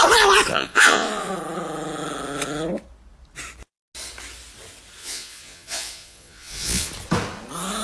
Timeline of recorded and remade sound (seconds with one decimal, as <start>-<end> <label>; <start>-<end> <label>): 0.0-0.5 recorded; 0.5-1.3 remade; 1.3-5.0 recorded; 5.0-6.9 remade; 6.9-7.8 recorded